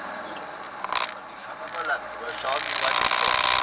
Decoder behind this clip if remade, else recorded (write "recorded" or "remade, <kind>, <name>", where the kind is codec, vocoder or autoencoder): recorded